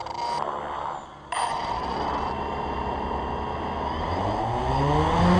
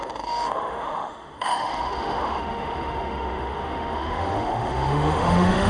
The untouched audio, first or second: first